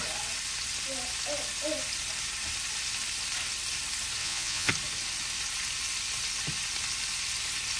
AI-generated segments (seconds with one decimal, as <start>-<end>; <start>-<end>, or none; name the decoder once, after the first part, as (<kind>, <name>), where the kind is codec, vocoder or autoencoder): 4.2-4.7 (vocoder, Vocos)